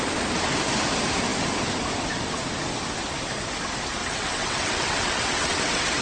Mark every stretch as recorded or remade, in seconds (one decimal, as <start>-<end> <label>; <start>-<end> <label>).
0.0-4.0 recorded; 4.0-6.0 remade